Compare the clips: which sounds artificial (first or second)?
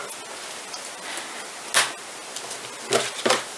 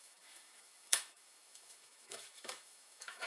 second